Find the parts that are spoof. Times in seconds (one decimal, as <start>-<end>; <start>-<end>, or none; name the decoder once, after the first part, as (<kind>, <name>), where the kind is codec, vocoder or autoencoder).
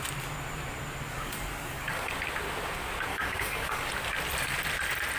1.1-2.1 (codec, DAC); 3.1-3.9